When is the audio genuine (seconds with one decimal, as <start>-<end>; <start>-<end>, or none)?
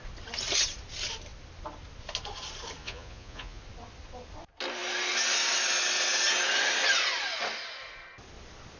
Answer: 0.0-2.8; 3.6-8.8